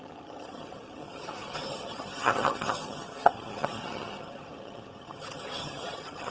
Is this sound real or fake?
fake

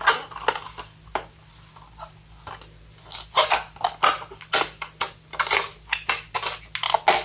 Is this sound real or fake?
real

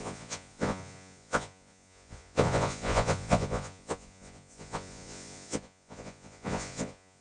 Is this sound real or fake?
fake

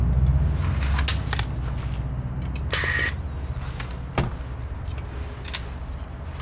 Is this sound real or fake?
real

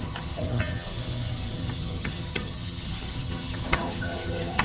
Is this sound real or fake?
fake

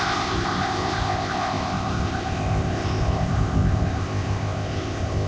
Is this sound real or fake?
fake